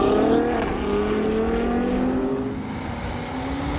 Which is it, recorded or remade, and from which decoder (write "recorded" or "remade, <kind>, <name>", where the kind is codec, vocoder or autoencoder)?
recorded